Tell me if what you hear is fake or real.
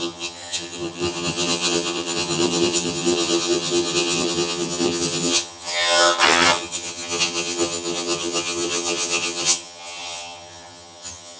fake